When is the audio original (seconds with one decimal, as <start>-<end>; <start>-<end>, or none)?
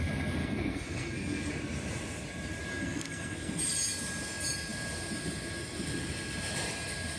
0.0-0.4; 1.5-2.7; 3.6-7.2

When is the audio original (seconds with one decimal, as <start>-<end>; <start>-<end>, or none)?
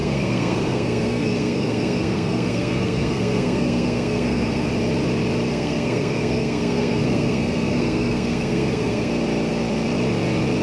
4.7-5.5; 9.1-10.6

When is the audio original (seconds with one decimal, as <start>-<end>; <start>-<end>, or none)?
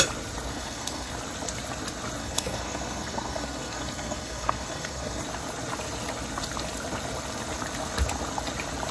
0.0-0.5; 1.1-2.2; 5.2-8.9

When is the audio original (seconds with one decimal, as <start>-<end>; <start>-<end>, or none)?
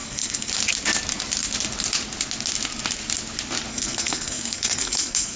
0.5-3.7